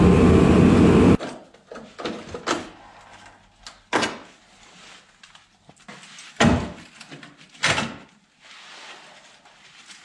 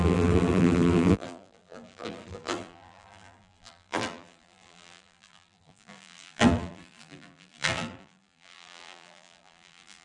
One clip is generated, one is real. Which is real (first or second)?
first